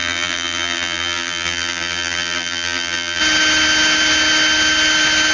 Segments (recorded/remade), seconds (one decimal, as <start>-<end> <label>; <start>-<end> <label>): 0.0-3.2 remade; 3.2-5.3 recorded